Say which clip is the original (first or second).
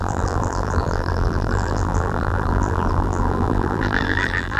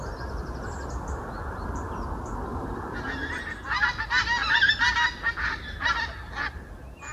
second